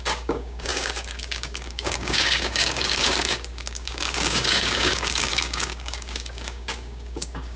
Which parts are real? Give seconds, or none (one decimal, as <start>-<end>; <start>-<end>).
none

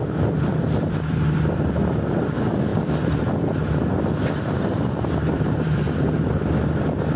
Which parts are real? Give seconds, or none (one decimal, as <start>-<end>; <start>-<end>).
none

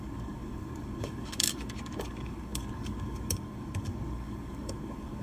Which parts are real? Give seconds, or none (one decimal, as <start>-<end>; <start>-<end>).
none

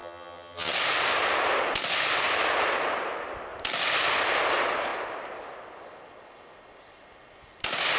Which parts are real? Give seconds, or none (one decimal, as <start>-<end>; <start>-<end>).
0.7-8.0

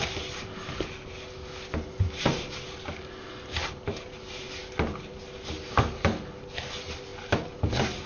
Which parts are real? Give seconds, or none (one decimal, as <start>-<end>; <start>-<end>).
0.0-8.1

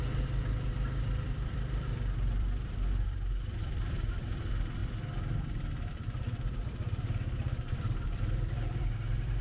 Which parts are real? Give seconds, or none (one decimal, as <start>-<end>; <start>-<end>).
4.8-5.9